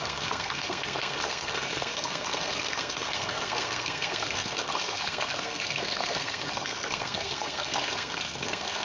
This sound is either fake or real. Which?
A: fake